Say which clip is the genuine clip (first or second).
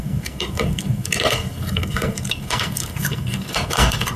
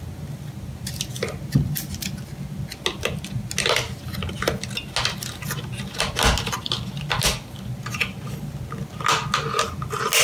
second